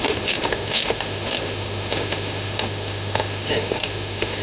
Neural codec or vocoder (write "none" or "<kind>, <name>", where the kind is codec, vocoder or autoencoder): autoencoder, DAC-VAE